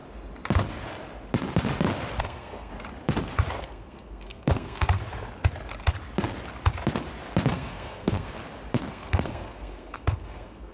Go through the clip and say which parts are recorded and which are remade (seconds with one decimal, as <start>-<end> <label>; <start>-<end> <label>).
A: 0.0-2.2 recorded; 2.2-2.7 remade; 2.7-3.6 recorded; 3.6-5.0 remade; 5.0-7.5 recorded; 7.5-8.4 remade; 8.4-8.9 recorded; 8.9-10.7 remade